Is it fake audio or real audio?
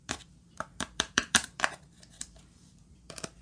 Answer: fake